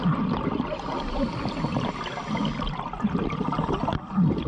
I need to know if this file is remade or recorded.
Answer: recorded